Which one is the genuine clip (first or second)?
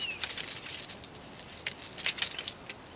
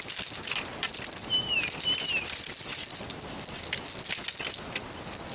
second